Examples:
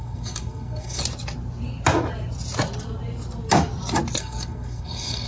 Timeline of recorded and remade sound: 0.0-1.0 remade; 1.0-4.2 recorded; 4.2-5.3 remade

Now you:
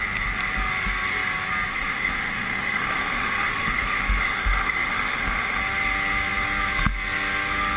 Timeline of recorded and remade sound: 0.0-1.7 recorded; 1.7-5.6 remade; 5.6-7.8 recorded

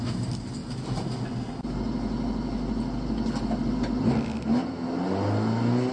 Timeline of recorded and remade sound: 0.0-5.9 recorded

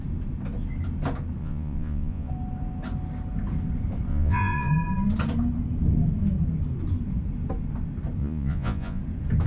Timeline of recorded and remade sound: 0.0-1.4 recorded; 1.4-2.3 remade; 2.3-4.1 recorded; 4.1-4.7 remade; 4.7-8.2 recorded; 8.2-9.0 remade; 9.0-9.5 recorded

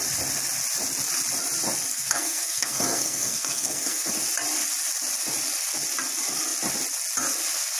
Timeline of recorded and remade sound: 0.0-1.9 recorded; 1.9-4.1 remade; 4.1-7.8 recorded

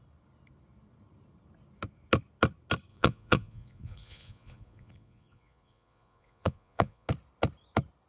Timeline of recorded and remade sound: 0.0-2.9 recorded; 2.9-7.1 remade; 7.1-8.1 recorded

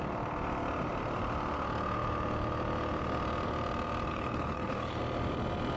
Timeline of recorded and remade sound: 0.0-4.1 recorded; 4.1-5.0 remade; 5.0-5.8 recorded